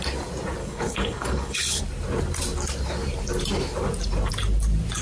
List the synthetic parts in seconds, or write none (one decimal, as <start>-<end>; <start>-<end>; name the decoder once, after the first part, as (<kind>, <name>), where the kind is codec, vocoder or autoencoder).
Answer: 0.6-1.8 (codec, HILCodec)